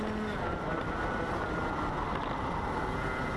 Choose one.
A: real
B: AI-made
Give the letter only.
A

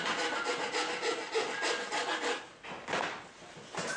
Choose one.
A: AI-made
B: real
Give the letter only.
B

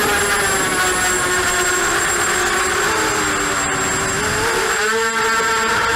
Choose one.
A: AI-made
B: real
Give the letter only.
B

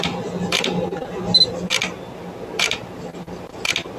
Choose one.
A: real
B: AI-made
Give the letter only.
A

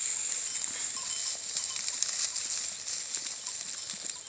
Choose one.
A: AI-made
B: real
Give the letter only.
B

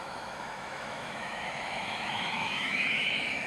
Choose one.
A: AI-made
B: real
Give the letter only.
A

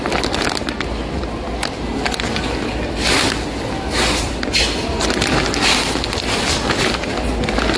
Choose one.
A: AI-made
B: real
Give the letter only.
B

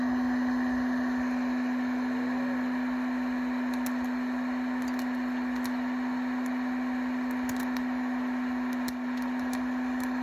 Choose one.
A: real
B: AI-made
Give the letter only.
A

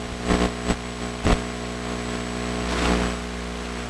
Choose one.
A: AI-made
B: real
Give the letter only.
B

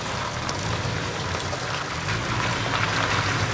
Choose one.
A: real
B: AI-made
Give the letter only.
A